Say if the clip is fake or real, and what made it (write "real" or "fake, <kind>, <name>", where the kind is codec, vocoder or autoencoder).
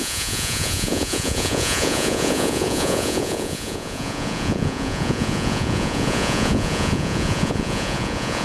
fake, vocoder, Vocos